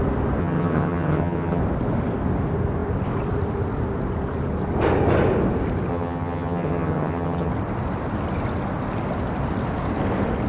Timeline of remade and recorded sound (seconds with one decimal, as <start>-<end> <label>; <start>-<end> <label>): 0.0-0.4 recorded; 0.4-1.6 remade; 1.6-5.9 recorded; 5.9-7.5 remade; 7.5-10.5 recorded